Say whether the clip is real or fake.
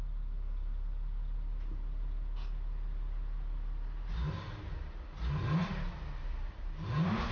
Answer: real